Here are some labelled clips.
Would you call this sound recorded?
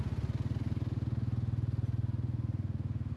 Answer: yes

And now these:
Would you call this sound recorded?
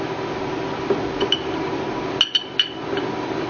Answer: yes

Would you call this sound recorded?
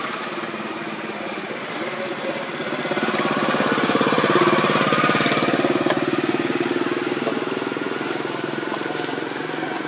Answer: yes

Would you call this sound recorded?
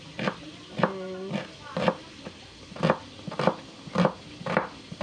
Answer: yes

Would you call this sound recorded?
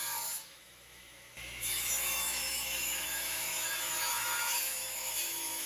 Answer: no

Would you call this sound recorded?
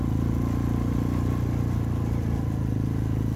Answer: yes